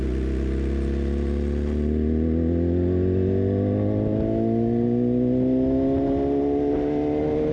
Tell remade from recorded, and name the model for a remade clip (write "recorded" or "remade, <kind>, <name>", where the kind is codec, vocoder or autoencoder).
recorded